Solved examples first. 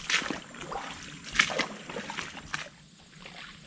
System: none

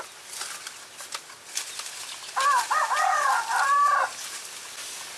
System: none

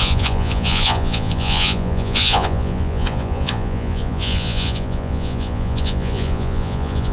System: vocoder, Vocos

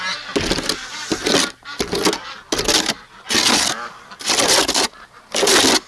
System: none